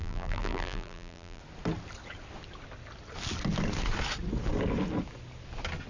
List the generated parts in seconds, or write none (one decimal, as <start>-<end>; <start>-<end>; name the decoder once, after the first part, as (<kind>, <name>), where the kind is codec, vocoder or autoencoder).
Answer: 0.0-1.4 (vocoder, BigVGAN v2)